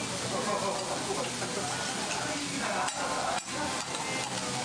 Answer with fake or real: real